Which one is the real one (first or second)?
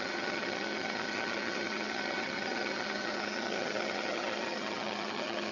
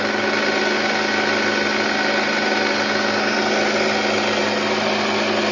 second